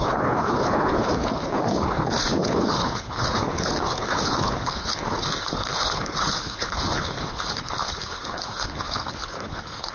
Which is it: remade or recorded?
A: remade